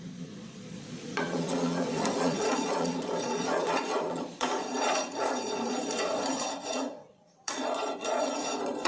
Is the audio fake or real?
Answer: fake